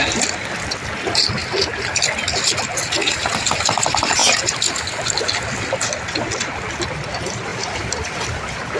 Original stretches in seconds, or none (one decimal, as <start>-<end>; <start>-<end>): 0.0-8.8

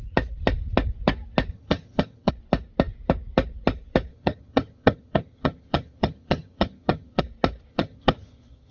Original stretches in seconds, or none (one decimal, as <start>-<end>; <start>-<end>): 0.0-1.5; 2.3-4.1; 7.2-7.7

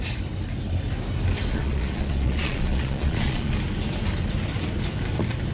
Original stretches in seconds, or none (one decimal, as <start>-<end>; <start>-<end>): 0.0-1.5; 3.5-5.5

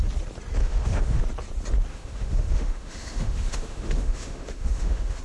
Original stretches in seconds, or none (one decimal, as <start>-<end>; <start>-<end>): 0.0-0.6; 1.2-1.9